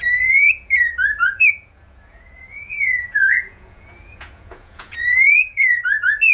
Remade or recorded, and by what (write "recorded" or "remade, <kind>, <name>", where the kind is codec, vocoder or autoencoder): remade, vocoder, Vocos